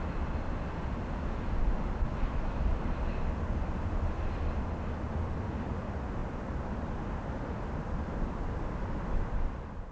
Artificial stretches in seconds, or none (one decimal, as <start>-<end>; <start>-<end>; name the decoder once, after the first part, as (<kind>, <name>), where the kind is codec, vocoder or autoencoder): 6.2-6.9 (vocoder, BigVGAN v2)